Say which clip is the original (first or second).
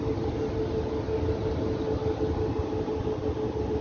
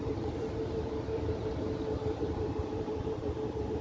first